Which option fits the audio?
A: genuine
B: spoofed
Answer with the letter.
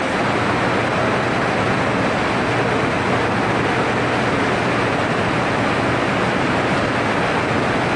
A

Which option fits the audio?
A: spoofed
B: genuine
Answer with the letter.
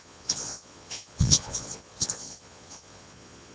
A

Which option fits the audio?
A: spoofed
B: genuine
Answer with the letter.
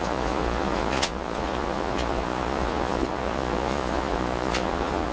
A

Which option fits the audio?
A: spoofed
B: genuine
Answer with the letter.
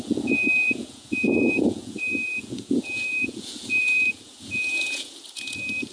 A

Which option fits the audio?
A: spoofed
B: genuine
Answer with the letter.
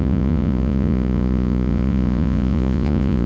A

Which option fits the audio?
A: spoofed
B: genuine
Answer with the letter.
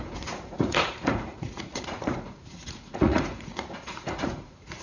A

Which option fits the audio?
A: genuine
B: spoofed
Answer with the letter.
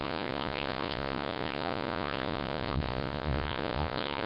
B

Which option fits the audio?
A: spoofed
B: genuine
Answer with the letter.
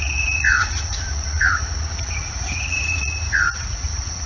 A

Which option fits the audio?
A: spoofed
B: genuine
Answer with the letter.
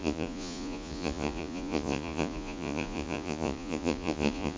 A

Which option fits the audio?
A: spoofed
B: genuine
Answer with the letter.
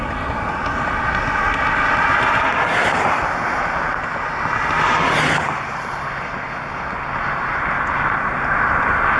B